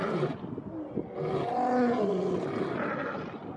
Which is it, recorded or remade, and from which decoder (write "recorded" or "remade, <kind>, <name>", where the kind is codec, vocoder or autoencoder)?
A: recorded